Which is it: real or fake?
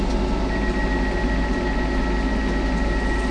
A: real